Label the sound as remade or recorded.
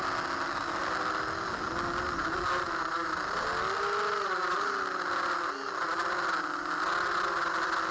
recorded